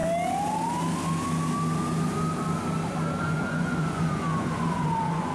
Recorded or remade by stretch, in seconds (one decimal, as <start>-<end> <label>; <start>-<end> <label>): 0.0-3.2 recorded; 3.2-5.3 remade